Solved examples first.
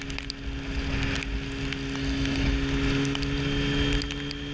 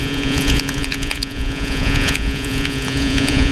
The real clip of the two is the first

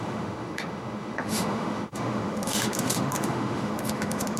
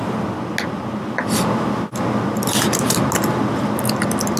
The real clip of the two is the second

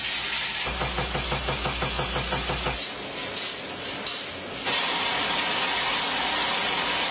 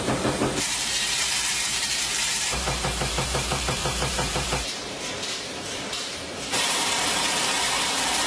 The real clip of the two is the first